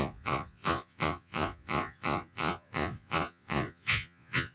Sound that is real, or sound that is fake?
fake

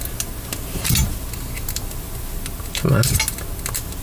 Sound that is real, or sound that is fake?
real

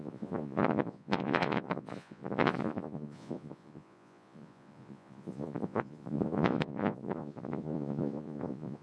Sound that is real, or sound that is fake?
fake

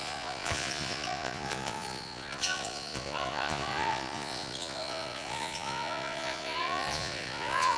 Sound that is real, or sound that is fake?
fake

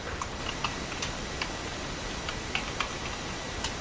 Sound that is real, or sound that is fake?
real